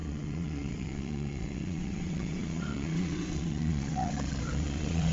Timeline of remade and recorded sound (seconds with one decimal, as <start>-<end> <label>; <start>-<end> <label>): 0.0-5.1 remade